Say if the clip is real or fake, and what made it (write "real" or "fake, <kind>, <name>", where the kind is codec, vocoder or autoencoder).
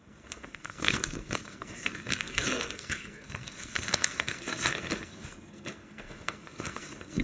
fake, codec, SNAC